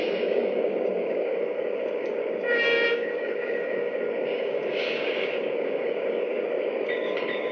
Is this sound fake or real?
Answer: fake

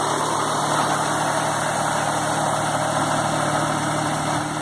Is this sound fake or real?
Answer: real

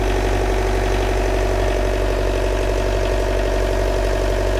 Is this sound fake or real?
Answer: real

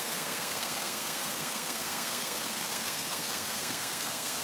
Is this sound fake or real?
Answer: fake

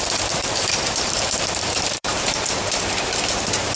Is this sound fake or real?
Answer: fake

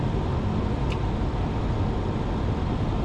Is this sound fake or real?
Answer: real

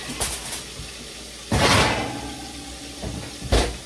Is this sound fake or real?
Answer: real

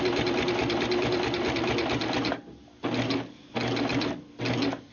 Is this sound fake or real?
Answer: real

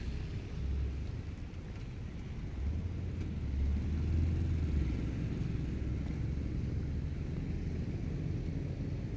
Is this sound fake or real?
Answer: real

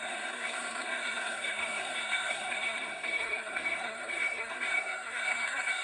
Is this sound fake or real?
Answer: fake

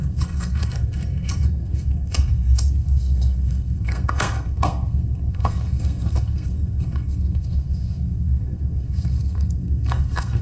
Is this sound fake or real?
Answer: fake